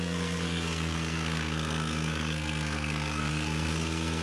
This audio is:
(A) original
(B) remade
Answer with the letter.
B